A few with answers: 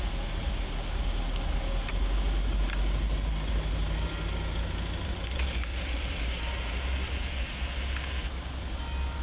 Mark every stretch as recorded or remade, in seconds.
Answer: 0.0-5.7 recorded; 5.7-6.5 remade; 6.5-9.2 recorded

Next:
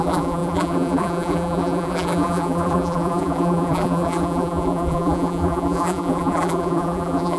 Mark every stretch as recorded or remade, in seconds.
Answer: 0.0-7.4 remade

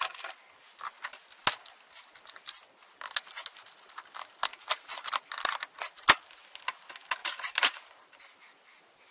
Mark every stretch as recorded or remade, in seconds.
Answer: 0.0-4.5 recorded; 4.5-5.1 remade; 5.1-7.2 recorded; 7.2-8.2 remade; 8.2-9.1 recorded

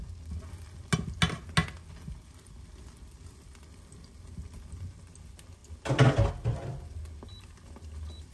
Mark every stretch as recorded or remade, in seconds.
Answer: 0.0-8.3 recorded

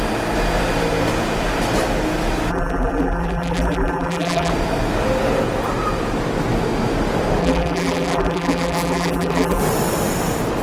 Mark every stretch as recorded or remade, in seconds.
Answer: 0.0-2.5 recorded; 2.5-4.5 remade; 4.5-7.4 recorded; 7.4-9.6 remade; 9.6-10.6 recorded

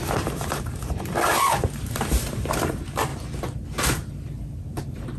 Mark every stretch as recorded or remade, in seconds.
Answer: 0.0-3.1 remade; 3.1-4.8 recorded; 4.8-5.2 remade